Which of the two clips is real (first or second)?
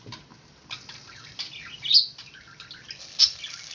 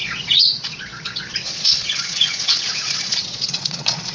first